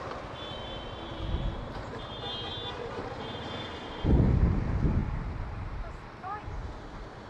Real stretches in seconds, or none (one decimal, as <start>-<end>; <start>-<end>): 0.0-1.1; 1.7-5.0; 6.4-7.3